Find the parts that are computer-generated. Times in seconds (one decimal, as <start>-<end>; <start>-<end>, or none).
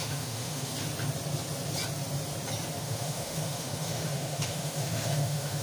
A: 0.0-0.7; 2.8-5.6